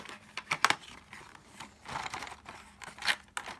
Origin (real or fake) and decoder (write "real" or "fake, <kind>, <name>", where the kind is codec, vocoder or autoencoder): real